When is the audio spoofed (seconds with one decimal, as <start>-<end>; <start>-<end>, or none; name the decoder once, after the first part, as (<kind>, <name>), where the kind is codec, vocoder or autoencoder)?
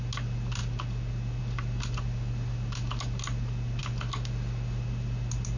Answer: none